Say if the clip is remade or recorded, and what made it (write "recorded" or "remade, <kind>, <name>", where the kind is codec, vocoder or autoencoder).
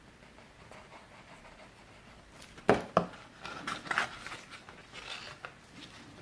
recorded